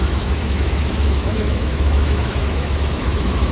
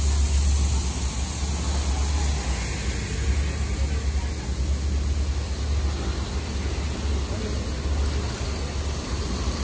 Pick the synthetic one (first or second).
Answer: first